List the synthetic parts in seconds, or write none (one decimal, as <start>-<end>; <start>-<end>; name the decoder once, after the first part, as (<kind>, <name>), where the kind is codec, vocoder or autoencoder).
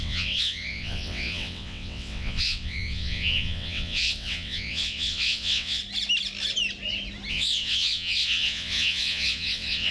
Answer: 0.0-5.8 (vocoder, WaveNeXt); 7.3-9.9